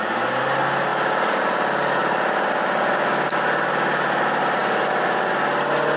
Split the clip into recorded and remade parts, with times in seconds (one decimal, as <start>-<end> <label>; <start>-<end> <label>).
0.0-2.0 recorded; 2.0-3.1 remade; 3.1-4.6 recorded; 4.6-5.5 remade; 5.5-6.0 recorded